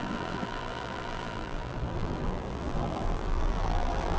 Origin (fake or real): fake